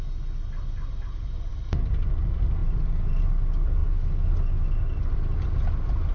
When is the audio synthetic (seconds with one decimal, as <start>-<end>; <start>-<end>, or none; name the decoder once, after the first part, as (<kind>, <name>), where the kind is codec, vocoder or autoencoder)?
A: none